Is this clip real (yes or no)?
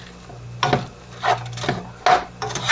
yes